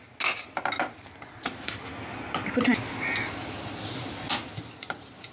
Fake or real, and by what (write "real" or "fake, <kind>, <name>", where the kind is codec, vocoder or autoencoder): real